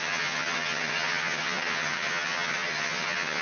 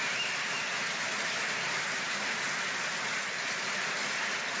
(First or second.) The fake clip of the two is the first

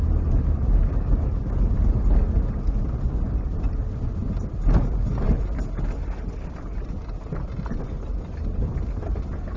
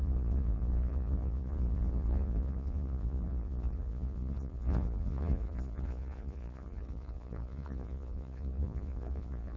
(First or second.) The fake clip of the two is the second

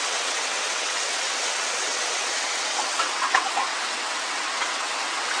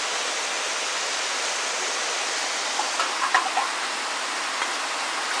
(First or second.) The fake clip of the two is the first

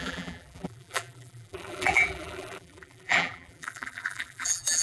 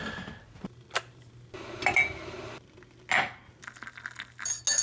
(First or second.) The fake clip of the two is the first